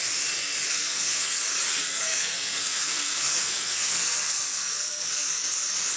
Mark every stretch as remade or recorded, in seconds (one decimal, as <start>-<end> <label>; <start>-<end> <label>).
0.0-0.7 recorded; 0.7-1.4 remade; 1.4-1.8 recorded; 1.8-5.4 remade; 5.4-6.0 recorded